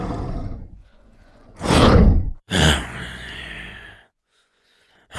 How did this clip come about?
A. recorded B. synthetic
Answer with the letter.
B